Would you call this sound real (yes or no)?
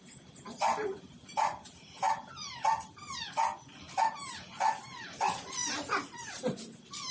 yes